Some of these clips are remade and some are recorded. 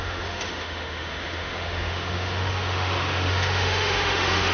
remade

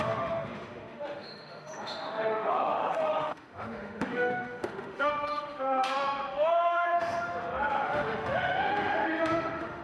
remade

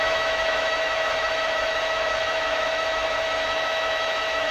remade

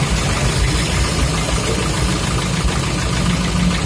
recorded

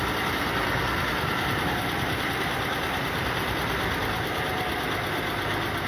recorded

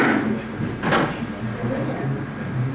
recorded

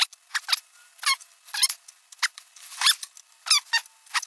recorded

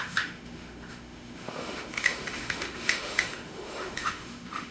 remade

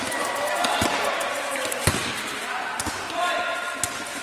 recorded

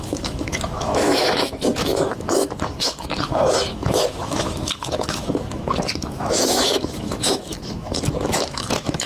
remade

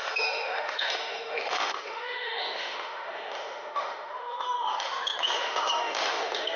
remade